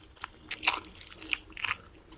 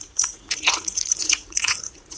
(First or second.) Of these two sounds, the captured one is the first